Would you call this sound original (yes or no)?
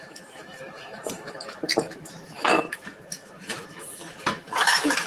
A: no